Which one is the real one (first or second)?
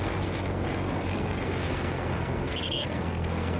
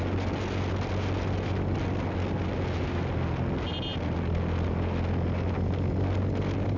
second